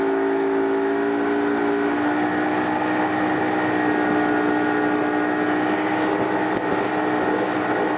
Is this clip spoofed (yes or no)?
no